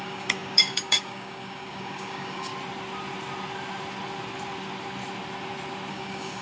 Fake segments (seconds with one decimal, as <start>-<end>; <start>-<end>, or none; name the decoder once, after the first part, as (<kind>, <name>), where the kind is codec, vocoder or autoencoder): 0.0-2.5 (codec, DAC); 5.9-6.4